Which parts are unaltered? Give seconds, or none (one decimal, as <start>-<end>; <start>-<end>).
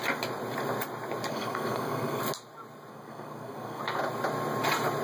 0.0-1.3; 2.2-2.9; 3.8-5.0